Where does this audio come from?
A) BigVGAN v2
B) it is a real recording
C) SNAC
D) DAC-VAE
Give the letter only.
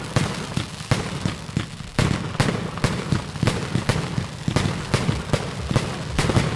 B